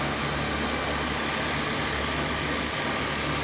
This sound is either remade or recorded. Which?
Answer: recorded